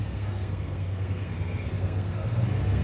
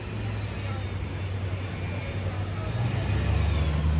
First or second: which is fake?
first